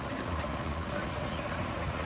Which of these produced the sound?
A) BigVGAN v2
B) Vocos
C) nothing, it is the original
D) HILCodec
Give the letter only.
B